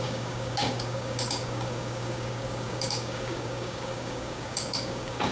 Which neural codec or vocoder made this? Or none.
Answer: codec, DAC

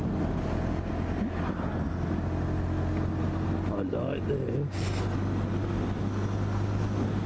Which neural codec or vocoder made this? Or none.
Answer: none